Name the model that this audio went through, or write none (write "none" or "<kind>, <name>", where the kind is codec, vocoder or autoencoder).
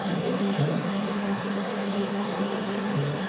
codec, SNAC